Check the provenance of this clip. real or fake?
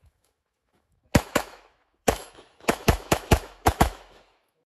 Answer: fake